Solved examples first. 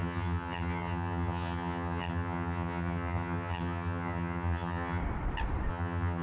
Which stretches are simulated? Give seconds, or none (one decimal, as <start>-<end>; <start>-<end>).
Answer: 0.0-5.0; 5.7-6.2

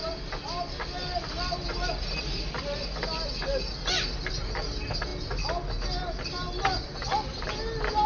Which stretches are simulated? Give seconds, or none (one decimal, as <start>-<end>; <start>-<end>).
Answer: none

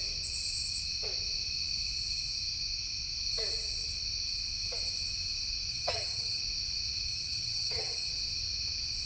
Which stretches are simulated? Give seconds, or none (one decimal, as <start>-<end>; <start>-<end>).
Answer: 5.7-6.4; 7.1-8.1

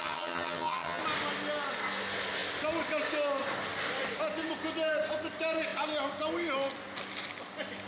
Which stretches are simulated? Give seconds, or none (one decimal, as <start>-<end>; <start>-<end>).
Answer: 0.0-1.0

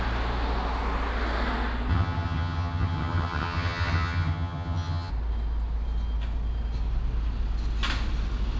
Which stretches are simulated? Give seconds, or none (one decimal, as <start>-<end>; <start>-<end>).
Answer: 1.9-5.1

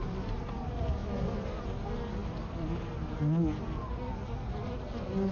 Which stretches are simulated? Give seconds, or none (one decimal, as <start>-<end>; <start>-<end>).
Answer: none

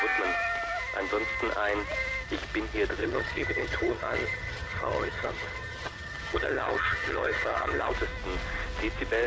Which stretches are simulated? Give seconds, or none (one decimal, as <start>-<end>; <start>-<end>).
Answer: 3.0-7.9